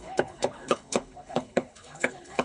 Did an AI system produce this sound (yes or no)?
yes